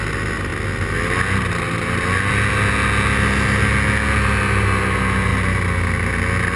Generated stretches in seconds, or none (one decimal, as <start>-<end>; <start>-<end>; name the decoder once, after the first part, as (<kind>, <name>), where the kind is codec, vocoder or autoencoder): none

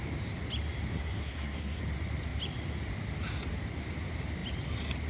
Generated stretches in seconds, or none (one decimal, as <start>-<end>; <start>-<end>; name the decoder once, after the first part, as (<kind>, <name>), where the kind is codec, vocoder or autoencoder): 0.9-1.8 (codec, SNAC)